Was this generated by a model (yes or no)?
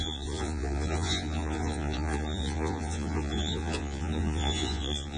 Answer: yes